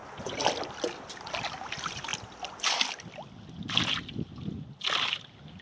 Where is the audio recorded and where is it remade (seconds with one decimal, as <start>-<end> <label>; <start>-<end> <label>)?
0.0-5.6 recorded